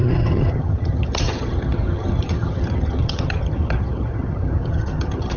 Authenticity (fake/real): fake